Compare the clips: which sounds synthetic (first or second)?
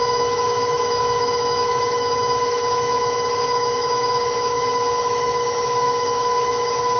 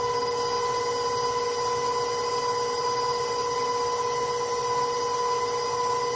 first